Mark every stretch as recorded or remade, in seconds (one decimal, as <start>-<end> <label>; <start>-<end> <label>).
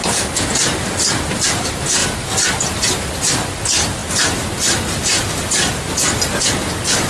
0.0-7.1 recorded